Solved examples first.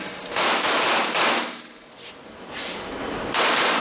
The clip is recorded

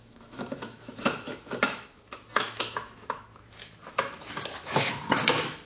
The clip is remade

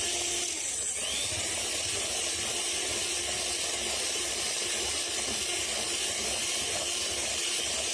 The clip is recorded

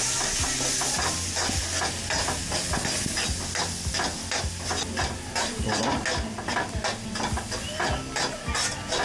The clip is recorded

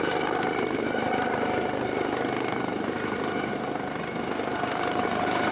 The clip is recorded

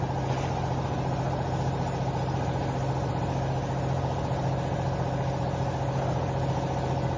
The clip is recorded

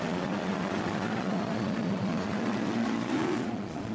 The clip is remade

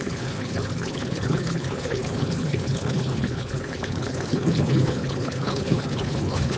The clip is remade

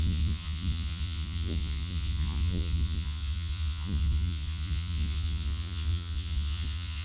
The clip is remade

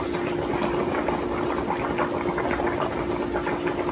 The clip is recorded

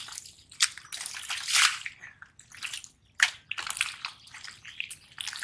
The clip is recorded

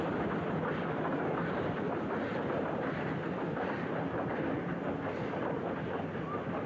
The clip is recorded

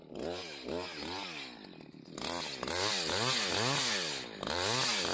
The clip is recorded